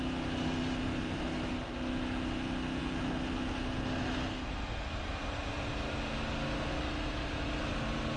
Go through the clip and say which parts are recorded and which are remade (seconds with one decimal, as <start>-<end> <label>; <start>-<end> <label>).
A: 0.0-8.2 recorded